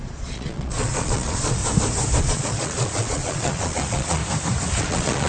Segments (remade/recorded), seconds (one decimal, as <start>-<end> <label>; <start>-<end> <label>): 0.0-1.6 remade; 1.6-2.2 recorded; 2.2-4.2 remade; 4.2-4.8 recorded; 4.8-5.3 remade